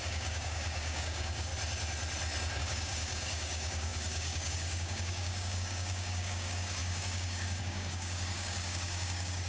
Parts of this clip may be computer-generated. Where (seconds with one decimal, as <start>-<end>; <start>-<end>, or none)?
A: 0.0-1.5; 2.6-9.5